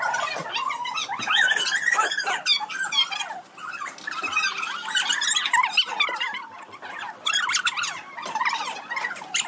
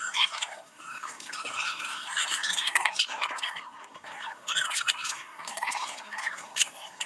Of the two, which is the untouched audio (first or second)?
first